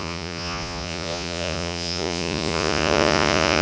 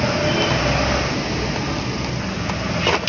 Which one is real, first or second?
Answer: second